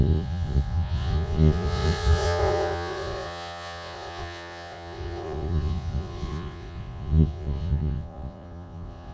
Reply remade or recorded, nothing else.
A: remade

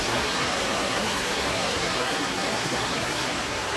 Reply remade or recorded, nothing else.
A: remade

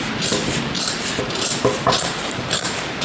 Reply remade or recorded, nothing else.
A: remade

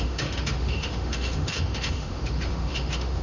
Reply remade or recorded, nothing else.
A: remade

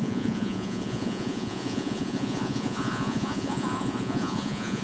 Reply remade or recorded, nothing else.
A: remade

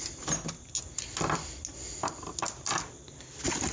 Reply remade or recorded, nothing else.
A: recorded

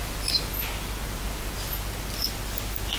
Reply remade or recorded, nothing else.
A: recorded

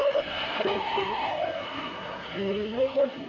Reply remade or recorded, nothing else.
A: remade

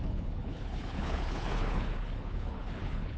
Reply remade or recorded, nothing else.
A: remade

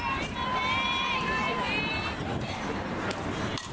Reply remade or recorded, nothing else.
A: remade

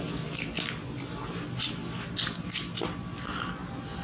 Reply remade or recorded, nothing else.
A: recorded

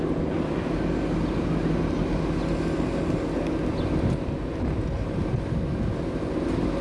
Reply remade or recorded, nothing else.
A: recorded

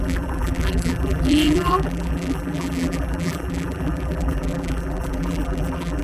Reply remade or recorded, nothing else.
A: remade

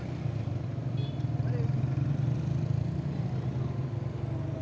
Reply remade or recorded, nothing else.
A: recorded